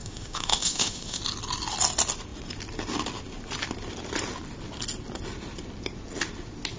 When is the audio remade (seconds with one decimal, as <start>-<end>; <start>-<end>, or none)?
0.0-1.2